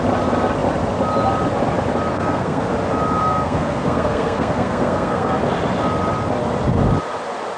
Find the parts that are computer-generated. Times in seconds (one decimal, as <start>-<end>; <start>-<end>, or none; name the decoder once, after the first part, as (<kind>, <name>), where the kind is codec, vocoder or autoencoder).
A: 2.1-2.7 (codec, SNAC); 3.2-5.4